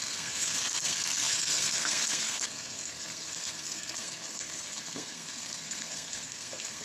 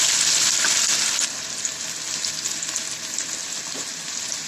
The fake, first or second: first